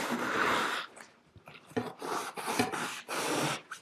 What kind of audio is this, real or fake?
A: fake